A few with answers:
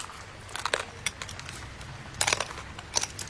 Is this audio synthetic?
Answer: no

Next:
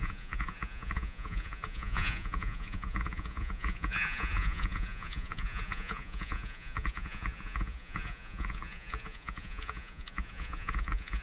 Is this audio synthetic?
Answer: yes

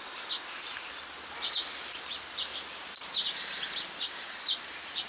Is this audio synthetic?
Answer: no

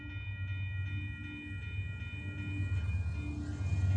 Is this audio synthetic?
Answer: no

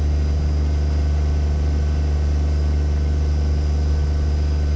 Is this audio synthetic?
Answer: no